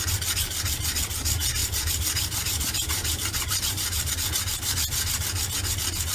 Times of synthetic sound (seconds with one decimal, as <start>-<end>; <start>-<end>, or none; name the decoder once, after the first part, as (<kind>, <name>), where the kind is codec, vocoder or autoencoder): 1.6-4.1 (vocoder, BigVGAN v2)